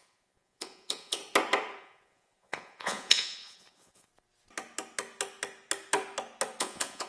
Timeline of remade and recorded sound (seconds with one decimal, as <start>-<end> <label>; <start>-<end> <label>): 0.0-1.2 remade; 1.2-1.8 recorded; 1.8-4.1 remade; 4.1-6.6 recorded; 6.6-7.1 remade